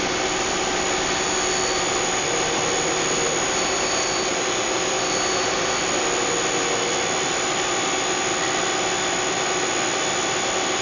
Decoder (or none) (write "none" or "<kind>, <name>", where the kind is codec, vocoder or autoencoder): none